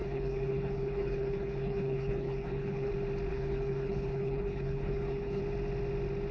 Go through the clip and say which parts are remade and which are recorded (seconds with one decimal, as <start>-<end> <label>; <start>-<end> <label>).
0.0-2.9 remade; 2.9-3.3 recorded; 3.3-5.4 remade; 5.4-6.3 recorded